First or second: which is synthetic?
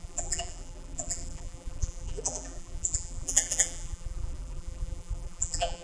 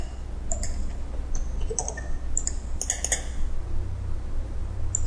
first